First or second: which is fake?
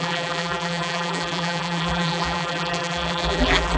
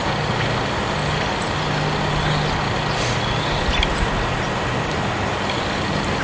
first